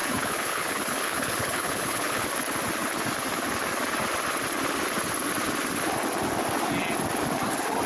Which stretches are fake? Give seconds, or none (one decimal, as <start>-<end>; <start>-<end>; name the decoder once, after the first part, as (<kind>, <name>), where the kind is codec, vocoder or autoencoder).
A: 0.0-2.3 (codec, HILCodec)